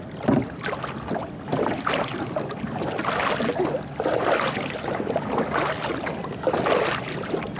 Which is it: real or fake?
real